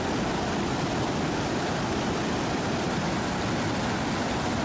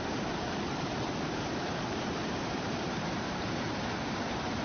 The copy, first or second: second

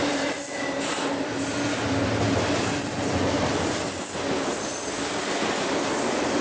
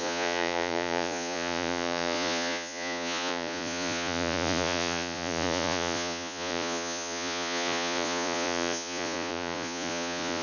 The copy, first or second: second